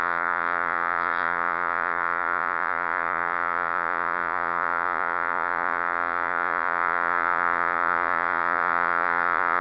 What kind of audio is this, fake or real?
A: fake